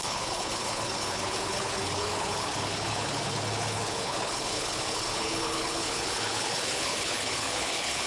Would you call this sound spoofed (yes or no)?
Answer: yes